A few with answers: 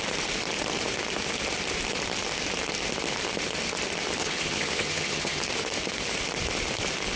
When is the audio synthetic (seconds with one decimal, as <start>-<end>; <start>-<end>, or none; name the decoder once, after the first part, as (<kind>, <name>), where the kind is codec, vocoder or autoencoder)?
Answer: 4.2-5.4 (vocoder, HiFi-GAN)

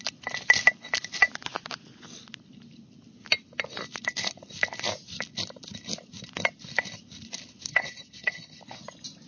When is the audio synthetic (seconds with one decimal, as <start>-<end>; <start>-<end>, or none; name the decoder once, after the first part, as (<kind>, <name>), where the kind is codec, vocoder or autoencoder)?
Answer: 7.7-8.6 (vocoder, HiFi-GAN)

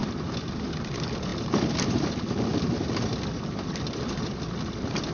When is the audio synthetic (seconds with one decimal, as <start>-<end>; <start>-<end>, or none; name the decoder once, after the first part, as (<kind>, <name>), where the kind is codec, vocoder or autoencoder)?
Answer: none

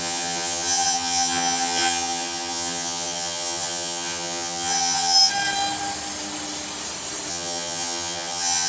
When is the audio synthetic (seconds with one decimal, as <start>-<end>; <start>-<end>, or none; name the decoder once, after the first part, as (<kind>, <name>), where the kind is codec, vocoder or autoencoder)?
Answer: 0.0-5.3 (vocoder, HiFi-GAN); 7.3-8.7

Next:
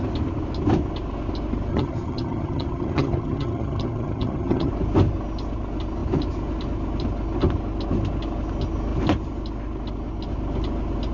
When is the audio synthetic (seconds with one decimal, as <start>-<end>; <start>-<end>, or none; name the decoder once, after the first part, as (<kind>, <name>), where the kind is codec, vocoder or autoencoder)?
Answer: 1.7-4.7 (vocoder, HiFi-GAN)